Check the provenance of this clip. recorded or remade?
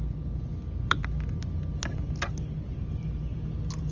recorded